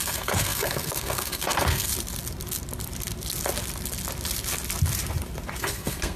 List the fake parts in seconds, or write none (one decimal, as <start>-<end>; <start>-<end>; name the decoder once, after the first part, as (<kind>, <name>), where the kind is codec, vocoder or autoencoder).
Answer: 0.0-1.9 (codec, SNAC); 5.6-6.2